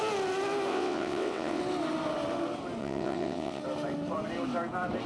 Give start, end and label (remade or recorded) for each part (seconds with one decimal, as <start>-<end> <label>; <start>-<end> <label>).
0.0-0.7 recorded; 0.7-1.6 remade; 1.6-2.8 recorded; 2.8-3.6 remade; 3.6-5.1 recorded